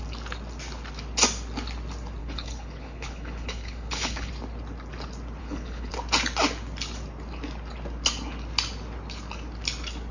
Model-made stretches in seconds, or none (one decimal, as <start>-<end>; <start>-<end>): 2.2-4.3; 5.4-5.9